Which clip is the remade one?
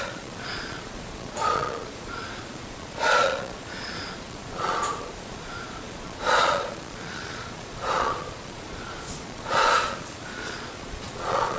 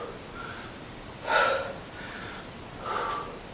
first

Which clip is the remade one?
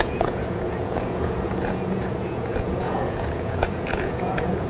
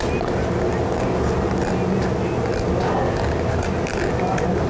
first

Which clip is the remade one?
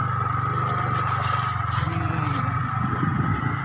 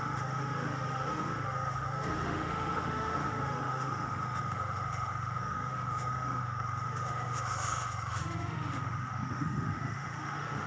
second